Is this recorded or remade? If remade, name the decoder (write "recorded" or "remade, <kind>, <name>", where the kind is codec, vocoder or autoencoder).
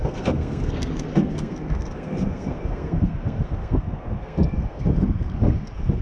remade, codec, SNAC